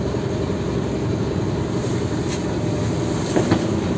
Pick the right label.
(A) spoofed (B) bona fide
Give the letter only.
B